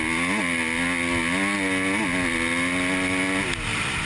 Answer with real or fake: real